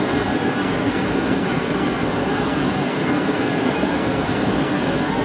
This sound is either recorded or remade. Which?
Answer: remade